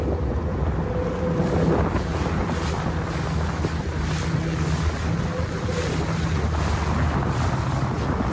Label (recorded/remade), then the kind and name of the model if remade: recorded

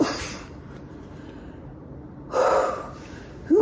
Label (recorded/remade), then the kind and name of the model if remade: recorded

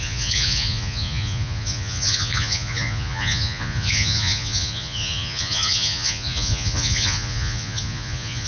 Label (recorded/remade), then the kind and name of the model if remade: remade, vocoder, Vocos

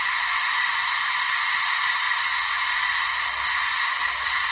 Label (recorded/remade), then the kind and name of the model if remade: recorded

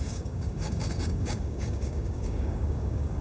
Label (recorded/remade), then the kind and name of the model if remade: remade, codec, DAC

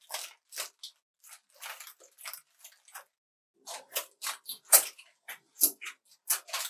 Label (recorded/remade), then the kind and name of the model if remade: recorded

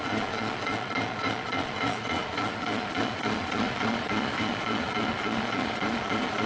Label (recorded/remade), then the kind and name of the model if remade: remade, vocoder, Vocos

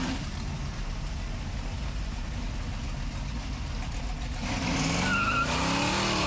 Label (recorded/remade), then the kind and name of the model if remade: recorded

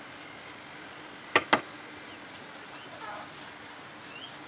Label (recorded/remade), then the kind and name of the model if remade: recorded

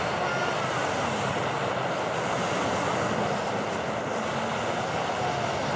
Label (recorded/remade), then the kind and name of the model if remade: recorded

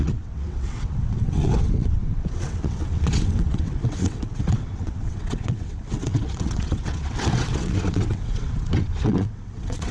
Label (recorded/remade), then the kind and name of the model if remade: remade, vocoder, WaveNeXt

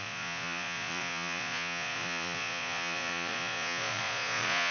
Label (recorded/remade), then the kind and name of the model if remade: remade, vocoder, Vocos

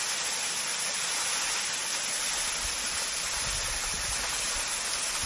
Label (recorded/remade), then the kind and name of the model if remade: recorded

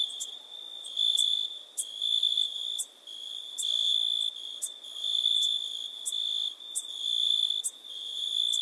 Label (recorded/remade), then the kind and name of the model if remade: recorded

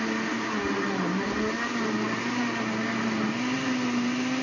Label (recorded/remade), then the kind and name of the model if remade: recorded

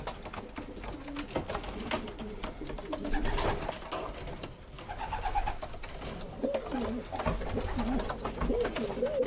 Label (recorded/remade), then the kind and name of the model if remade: recorded